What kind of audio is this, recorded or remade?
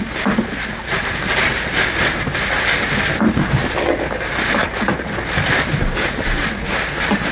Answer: recorded